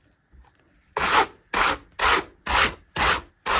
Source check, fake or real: real